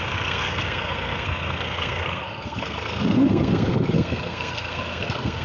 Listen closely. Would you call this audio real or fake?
fake